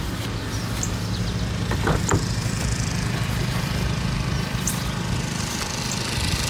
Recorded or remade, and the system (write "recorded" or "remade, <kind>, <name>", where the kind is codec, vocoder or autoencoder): remade, vocoder, BigVGAN v2